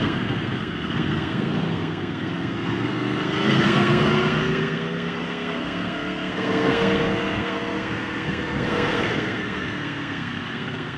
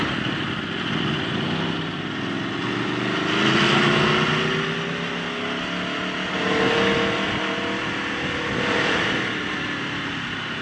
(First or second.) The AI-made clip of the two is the first